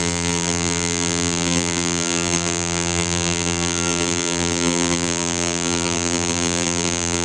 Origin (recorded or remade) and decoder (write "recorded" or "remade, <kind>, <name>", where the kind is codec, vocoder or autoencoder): remade, vocoder, BigVGAN v2